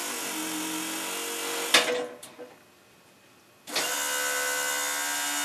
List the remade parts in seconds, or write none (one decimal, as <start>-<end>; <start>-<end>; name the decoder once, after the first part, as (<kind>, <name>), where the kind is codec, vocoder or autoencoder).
none